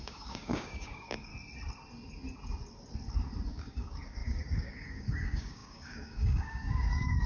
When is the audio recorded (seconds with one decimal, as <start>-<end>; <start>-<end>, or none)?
1.3-3.5